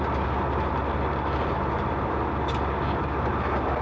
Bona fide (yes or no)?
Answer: yes